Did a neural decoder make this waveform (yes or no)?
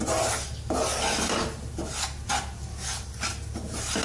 no